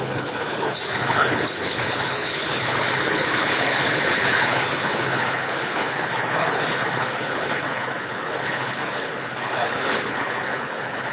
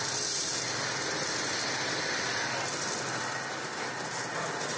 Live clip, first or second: second